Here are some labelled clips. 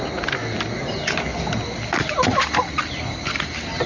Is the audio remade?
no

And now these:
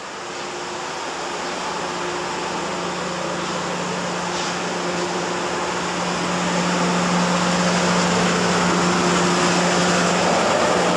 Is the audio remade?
no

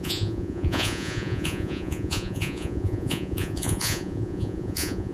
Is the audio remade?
yes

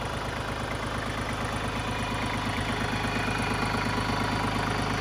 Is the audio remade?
no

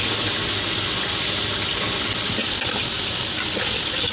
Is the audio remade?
no